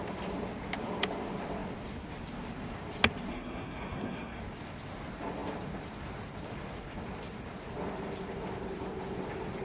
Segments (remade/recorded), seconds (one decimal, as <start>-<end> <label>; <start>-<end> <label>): 0.0-3.3 recorded; 3.3-4.4 remade; 4.4-9.6 recorded